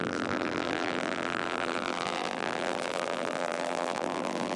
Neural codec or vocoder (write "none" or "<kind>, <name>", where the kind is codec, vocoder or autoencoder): vocoder, BigVGAN v2